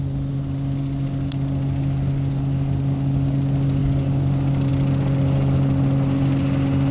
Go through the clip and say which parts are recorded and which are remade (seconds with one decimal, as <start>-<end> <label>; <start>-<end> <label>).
0.0-6.9 recorded